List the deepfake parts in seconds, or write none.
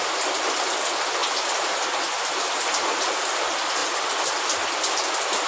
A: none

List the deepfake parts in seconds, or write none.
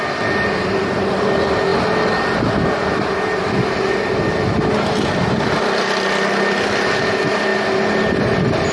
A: none